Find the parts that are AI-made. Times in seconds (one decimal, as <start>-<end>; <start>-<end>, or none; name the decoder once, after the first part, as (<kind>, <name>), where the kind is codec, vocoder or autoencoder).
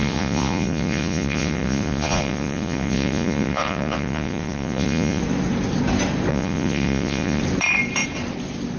0.0-5.2 (vocoder, Vocos); 6.3-7.4